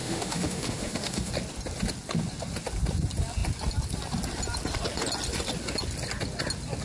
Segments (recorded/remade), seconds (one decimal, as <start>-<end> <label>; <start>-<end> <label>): 0.0-1.3 remade; 1.3-6.8 recorded